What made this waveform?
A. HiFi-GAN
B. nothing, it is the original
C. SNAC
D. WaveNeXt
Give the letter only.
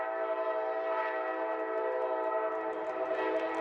B